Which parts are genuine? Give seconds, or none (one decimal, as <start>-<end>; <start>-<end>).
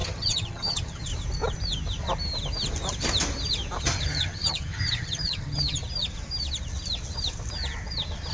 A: 1.1-3.8; 5.8-8.3